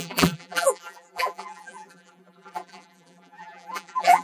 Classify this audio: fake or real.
fake